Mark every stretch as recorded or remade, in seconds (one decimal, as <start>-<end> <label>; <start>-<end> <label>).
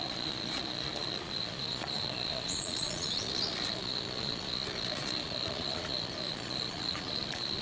0.0-7.6 remade